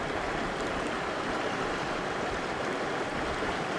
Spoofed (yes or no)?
yes